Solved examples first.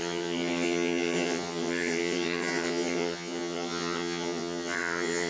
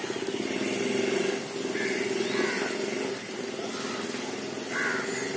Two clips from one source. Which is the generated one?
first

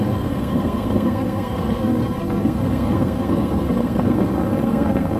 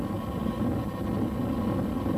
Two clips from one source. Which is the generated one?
first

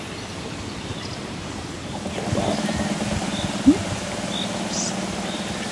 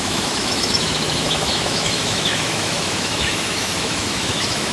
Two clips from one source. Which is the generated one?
second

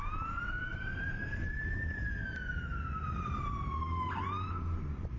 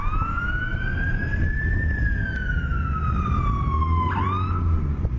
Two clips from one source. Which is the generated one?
first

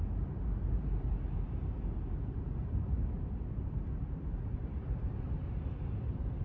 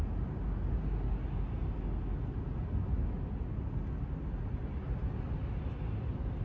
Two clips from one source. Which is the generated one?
first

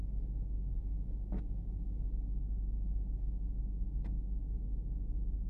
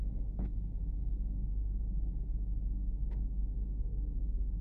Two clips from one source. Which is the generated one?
second